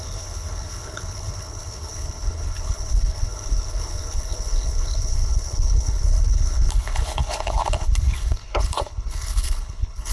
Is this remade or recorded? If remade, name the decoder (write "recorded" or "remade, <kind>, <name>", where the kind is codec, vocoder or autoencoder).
remade, codec, HILCodec